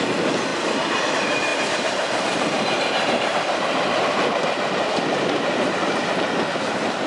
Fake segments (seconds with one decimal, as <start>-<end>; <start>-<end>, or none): 1.5-5.8